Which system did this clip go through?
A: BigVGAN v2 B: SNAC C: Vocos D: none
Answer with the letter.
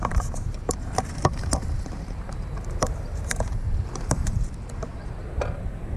A